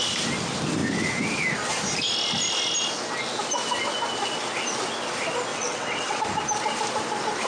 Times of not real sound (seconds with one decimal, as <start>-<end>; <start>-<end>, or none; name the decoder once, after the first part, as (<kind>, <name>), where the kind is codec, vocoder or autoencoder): 5.5-6.2 (vocoder, WaveNeXt)